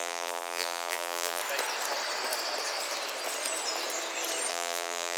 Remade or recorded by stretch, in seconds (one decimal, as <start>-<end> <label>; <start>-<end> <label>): 0.0-1.4 remade; 1.4-4.5 recorded; 4.5-5.2 remade